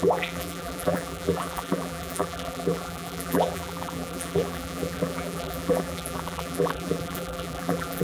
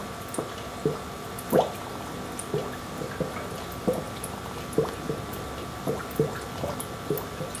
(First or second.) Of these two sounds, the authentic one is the second